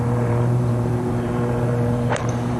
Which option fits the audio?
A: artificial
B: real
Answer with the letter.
A